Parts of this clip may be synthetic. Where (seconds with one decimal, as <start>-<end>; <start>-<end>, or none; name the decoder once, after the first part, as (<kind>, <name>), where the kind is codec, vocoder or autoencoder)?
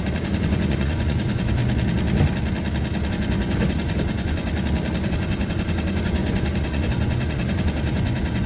0.0-1.6 (vocoder, Vocos); 3.1-4.5; 5.0-8.5